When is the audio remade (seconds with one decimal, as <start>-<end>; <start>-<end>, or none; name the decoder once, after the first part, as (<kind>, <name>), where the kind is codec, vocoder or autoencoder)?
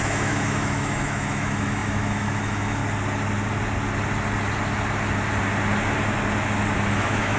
0.0-2.8 (autoencoder, DAC-VAE); 6.9-7.4